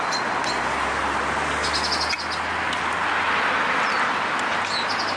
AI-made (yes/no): no